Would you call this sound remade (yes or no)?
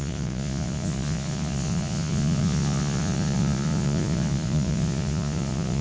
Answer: yes